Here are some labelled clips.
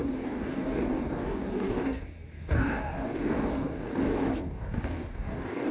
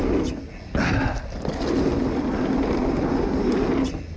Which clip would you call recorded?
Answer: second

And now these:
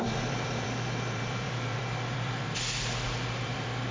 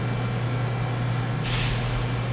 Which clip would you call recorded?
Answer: second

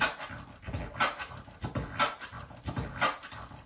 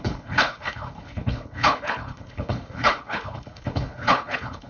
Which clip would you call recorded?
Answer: first